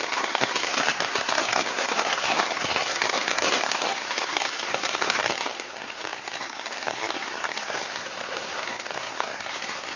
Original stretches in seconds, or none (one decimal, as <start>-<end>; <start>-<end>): none